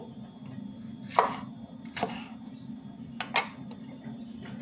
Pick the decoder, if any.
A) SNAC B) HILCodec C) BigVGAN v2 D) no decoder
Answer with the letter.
D